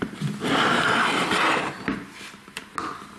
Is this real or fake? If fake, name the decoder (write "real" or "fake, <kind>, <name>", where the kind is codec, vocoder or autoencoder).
real